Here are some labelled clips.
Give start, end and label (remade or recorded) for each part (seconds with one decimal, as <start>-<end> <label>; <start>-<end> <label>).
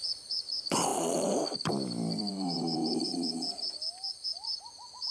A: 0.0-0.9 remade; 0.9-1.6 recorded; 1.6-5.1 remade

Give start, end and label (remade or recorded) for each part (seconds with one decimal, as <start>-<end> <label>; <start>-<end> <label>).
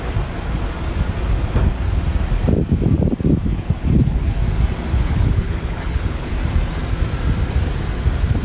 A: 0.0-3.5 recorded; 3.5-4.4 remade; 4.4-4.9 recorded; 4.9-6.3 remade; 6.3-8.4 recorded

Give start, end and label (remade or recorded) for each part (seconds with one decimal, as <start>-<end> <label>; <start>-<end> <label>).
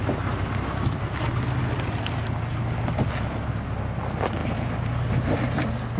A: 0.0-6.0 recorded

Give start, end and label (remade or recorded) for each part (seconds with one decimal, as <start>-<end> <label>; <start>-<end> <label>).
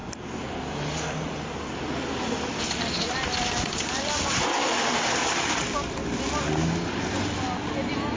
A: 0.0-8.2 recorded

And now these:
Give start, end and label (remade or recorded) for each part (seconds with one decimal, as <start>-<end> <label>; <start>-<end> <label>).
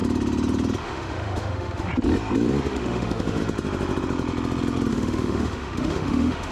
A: 0.0-0.8 recorded; 0.8-1.9 remade; 1.9-2.7 recorded; 2.7-3.4 remade; 3.4-4.9 recorded; 4.9-6.5 remade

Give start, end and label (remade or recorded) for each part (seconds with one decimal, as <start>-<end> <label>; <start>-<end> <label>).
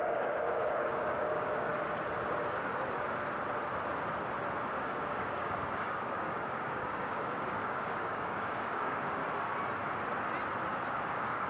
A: 0.0-1.7 remade; 1.7-4.6 recorded; 4.6-9.2 remade; 9.2-10.9 recorded; 10.9-11.5 remade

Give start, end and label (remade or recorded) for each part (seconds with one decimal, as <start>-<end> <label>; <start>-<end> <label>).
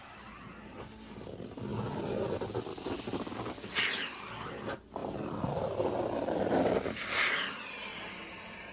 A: 0.0-8.7 recorded